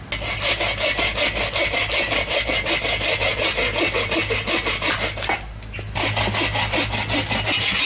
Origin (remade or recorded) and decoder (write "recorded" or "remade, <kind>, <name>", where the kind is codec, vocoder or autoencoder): recorded